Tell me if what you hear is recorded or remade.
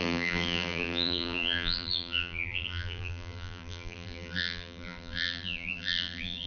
remade